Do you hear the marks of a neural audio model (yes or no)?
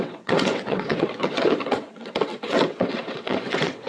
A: yes